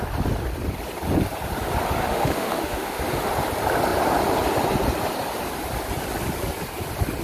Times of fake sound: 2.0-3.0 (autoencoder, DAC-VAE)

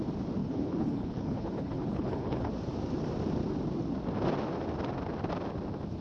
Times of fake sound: 0.4-2.5 (codec, HILCodec)